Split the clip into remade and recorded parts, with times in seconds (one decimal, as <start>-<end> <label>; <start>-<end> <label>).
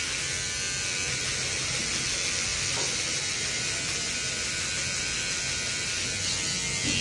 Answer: 0.0-2.5 recorded; 2.5-3.6 remade; 3.6-7.0 recorded